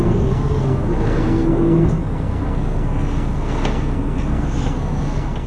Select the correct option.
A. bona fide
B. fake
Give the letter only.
B